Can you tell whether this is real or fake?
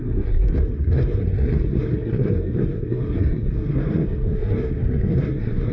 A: fake